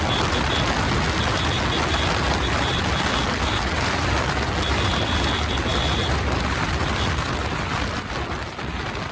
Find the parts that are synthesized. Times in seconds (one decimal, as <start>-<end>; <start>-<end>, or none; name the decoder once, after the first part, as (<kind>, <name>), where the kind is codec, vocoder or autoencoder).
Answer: none